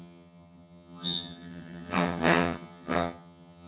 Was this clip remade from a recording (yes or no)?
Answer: yes